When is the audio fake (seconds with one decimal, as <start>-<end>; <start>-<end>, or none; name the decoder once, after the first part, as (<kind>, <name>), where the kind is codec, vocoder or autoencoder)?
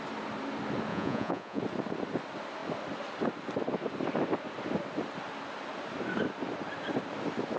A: 0.9-1.6 (vocoder, Vocos)